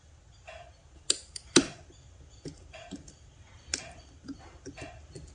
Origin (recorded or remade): recorded